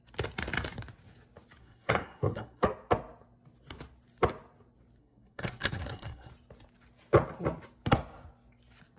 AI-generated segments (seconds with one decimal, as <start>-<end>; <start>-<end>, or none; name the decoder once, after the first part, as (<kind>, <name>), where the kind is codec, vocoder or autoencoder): 1.6-2.6 (codec, SNAC); 5.0-6.3